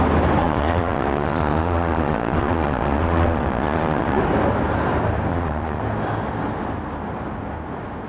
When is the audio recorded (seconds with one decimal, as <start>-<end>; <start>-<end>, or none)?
0.0-0.4; 4.2-5.3; 5.8-8.1